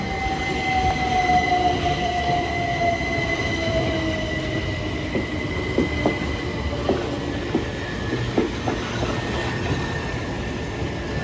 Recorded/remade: recorded